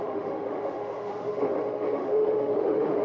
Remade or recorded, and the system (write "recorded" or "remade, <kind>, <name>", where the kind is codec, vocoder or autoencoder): remade, autoencoder, DAC-VAE